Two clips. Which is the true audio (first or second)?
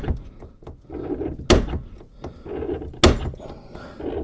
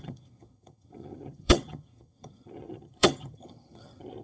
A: first